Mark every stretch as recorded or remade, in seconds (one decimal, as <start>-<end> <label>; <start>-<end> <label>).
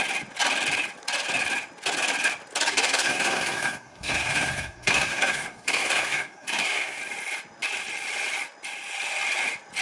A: 0.0-2.7 recorded; 2.7-7.0 remade; 7.0-9.8 recorded